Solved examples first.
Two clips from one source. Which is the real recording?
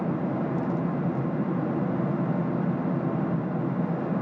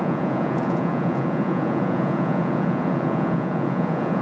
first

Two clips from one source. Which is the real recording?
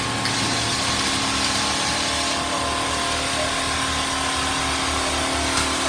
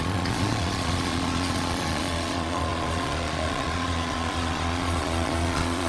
first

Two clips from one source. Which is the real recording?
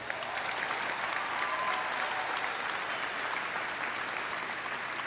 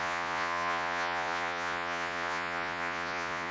first